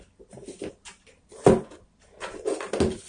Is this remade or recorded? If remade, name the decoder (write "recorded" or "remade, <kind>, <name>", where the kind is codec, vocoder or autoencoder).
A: recorded